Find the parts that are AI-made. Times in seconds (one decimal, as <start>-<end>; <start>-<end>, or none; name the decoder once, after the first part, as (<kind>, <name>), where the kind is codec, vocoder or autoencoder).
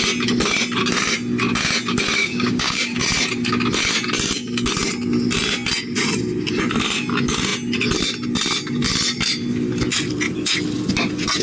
2.2-3.0 (codec, DAC)